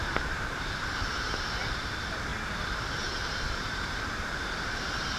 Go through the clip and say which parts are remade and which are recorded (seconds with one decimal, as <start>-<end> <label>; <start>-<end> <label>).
0.0-2.3 remade; 2.3-3.4 recorded; 3.4-5.2 remade